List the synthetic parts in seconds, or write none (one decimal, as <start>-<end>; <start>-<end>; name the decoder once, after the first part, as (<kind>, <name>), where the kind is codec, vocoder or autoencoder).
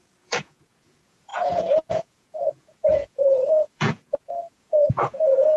0.0-5.6 (vocoder, Vocos)